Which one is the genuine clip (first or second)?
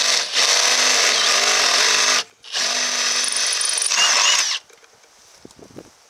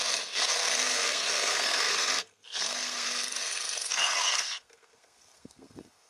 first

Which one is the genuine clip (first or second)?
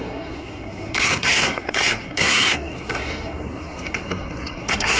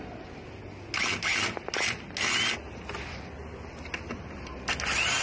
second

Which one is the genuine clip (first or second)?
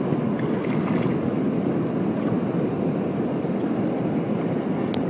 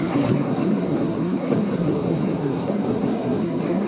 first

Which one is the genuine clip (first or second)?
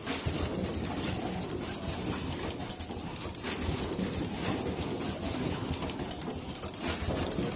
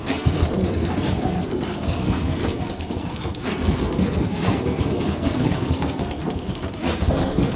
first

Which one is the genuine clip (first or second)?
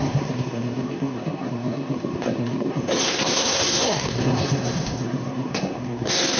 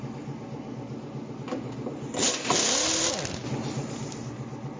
second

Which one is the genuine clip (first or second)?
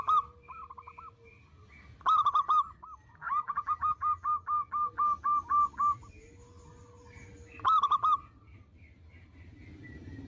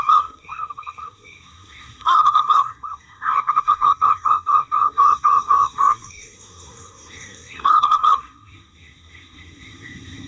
first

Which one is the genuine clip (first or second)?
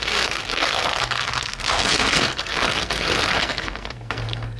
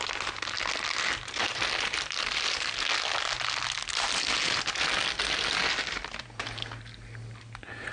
second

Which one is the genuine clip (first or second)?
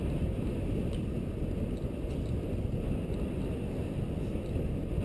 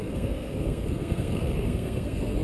first